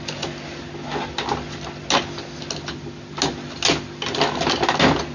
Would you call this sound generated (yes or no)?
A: no